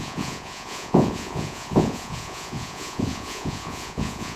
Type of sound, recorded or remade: remade